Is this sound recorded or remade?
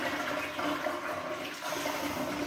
recorded